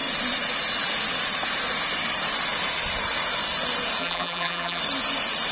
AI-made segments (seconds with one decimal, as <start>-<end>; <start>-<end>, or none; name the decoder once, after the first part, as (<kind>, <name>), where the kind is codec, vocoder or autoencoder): 4.0-4.8 (vocoder, BigVGAN v2)